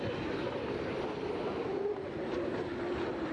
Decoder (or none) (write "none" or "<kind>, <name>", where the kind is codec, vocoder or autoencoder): none